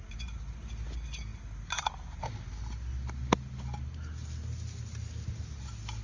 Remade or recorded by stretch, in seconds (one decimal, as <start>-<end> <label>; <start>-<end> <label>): 0.0-6.0 recorded